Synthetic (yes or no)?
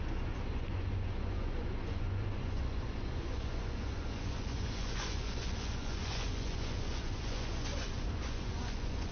yes